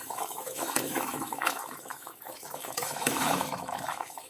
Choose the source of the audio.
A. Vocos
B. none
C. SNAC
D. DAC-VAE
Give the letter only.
D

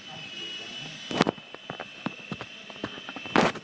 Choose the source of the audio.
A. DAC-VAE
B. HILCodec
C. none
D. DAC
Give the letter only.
C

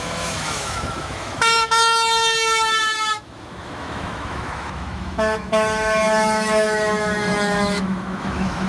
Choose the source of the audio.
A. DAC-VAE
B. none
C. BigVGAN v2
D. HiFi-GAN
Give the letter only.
A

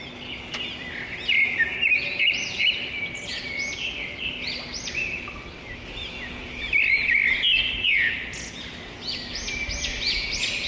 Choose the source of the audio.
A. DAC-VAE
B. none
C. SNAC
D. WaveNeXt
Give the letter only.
B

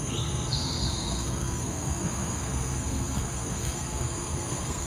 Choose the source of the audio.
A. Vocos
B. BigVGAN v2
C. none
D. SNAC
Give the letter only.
D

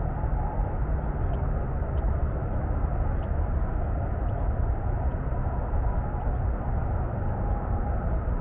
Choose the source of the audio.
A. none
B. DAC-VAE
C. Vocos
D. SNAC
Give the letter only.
A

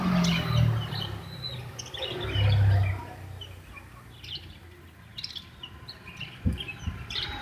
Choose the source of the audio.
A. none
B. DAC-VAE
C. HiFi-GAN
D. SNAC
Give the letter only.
A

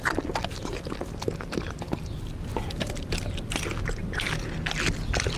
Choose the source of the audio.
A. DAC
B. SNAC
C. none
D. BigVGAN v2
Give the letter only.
C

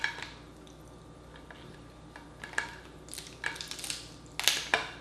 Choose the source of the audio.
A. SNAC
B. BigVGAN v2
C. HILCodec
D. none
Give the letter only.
D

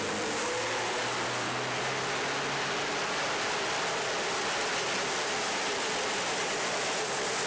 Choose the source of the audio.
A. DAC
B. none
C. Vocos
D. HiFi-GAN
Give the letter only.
B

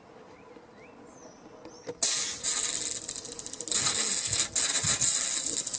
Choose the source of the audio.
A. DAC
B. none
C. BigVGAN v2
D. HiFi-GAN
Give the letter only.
B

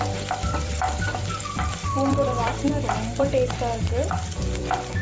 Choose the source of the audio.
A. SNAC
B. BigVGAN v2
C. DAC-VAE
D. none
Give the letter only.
B